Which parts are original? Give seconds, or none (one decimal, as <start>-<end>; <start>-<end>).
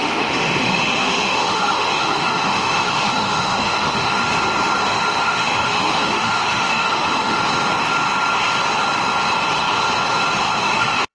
4.2-4.9; 7.4-10.4